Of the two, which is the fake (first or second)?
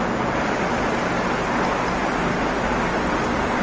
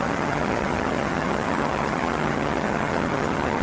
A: second